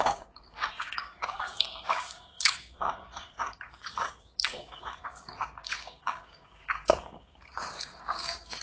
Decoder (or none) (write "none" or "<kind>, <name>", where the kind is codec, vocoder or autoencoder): codec, DAC